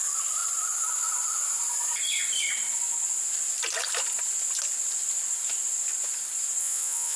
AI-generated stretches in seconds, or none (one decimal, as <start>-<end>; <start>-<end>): 6.6-7.2